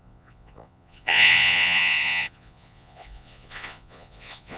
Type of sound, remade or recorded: remade